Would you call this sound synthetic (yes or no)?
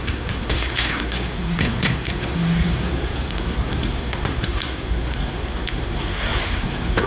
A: yes